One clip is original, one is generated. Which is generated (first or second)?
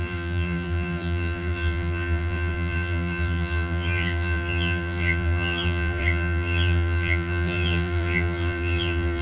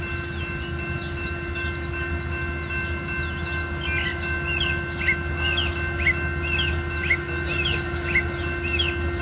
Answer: first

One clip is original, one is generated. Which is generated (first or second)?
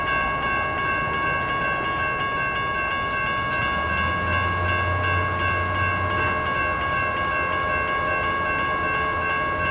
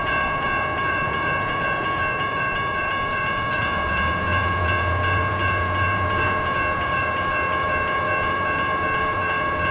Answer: second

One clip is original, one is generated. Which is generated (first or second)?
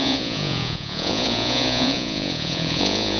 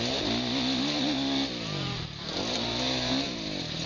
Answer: first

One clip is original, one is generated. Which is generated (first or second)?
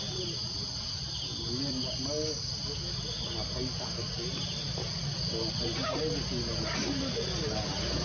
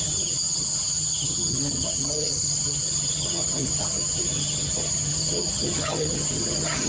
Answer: second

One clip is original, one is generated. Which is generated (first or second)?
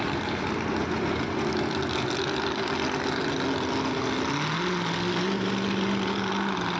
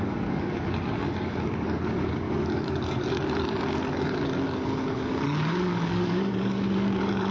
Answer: second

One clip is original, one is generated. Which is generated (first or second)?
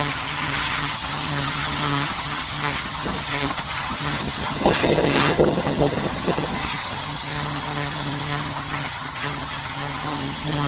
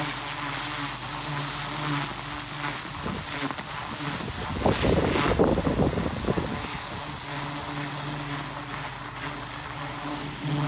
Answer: first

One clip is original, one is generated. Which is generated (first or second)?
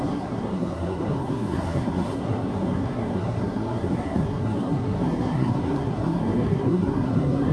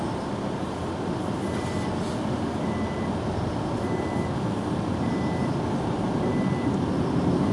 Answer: first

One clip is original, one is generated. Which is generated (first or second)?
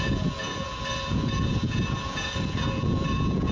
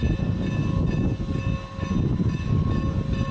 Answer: first